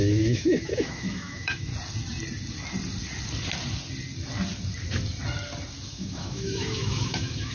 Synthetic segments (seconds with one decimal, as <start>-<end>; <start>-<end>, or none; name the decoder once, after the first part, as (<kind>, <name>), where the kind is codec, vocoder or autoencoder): 0.0-1.7 (autoencoder, DAC-VAE); 5.9-7.5